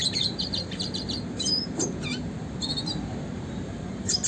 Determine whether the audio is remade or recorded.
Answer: remade